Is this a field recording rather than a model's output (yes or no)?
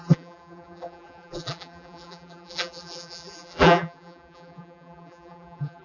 no